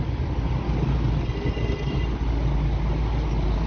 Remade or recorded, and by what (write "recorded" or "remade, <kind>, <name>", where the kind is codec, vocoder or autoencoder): recorded